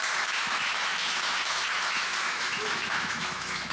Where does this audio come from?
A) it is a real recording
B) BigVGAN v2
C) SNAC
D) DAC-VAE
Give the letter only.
D